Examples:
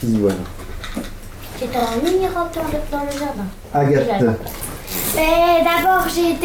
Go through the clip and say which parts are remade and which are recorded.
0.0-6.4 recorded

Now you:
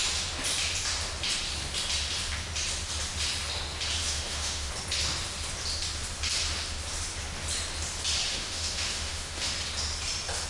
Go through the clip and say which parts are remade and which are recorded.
0.0-4.0 recorded; 4.0-4.7 remade; 4.7-8.3 recorded; 8.3-9.5 remade; 9.5-10.5 recorded

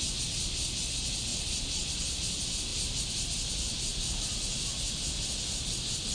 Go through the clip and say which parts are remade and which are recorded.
0.0-1.3 recorded; 1.3-1.9 remade; 1.9-6.1 recorded

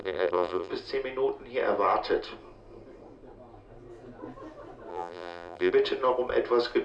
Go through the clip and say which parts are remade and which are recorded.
0.0-0.7 remade; 0.7-4.9 recorded; 4.9-5.7 remade; 5.7-6.8 recorded

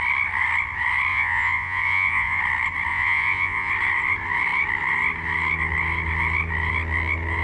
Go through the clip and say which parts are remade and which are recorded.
0.0-1.1 recorded; 1.1-2.4 remade; 2.4-2.9 recorded; 2.9-3.7 remade; 3.7-7.4 recorded